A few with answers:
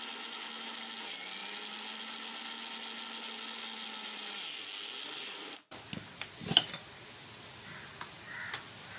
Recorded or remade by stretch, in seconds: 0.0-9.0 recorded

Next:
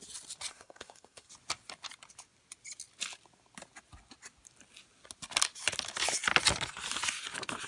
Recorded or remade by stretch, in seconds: 0.0-0.5 recorded; 0.5-1.3 remade; 1.3-7.7 recorded

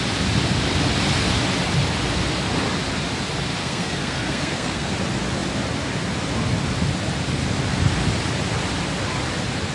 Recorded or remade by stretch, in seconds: 0.0-3.6 recorded; 3.6-4.9 remade; 4.9-9.7 recorded

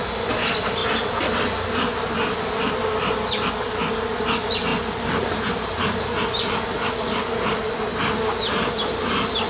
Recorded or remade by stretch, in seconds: 0.0-9.5 recorded

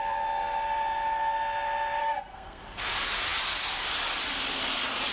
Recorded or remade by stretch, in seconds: 0.0-2.0 recorded; 2.0-2.6 remade; 2.6-5.1 recorded